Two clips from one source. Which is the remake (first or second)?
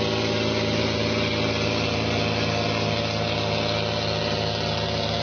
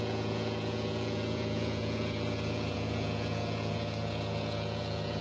second